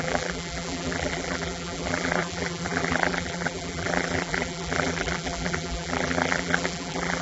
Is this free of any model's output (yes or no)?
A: no